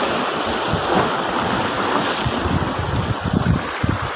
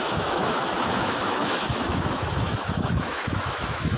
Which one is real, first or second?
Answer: first